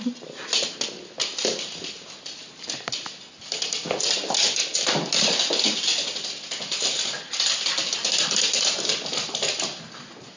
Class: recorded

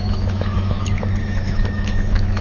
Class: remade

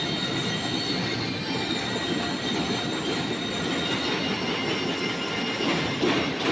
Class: recorded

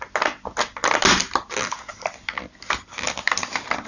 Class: recorded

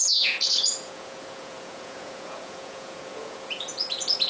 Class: remade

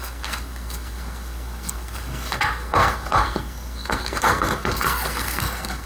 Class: remade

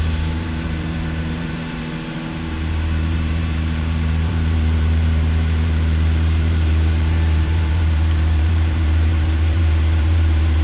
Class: remade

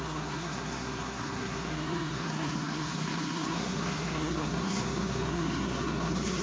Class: remade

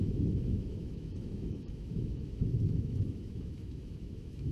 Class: remade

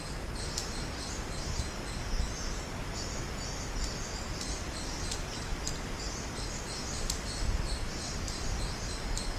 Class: recorded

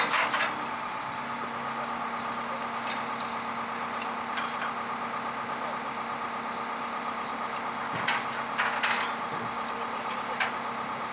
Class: recorded